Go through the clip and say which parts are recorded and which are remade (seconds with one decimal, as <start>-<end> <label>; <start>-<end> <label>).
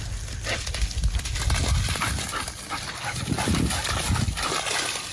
0.0-5.1 recorded